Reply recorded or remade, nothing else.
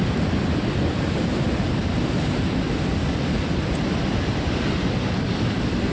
recorded